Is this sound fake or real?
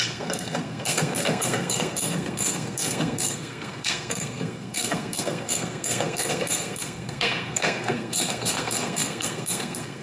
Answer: fake